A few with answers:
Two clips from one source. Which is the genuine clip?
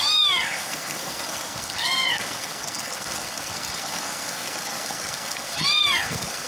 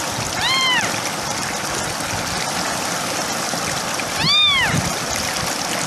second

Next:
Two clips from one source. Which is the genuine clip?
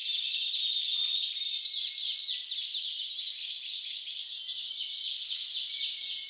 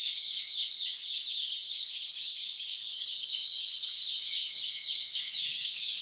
first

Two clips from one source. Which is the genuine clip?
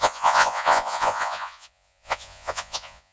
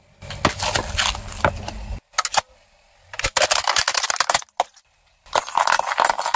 second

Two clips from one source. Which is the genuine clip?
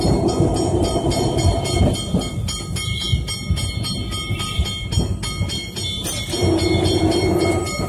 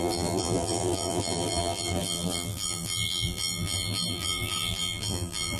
first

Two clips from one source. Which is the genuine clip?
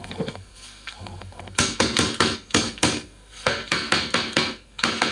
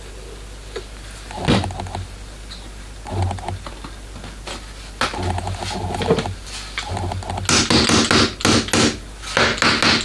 second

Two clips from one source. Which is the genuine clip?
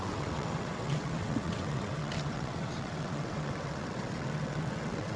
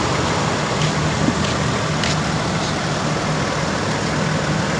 second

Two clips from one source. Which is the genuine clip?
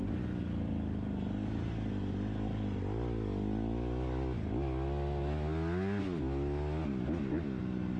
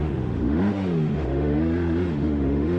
first